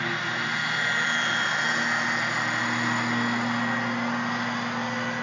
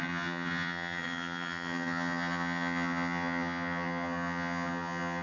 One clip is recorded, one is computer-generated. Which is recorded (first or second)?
first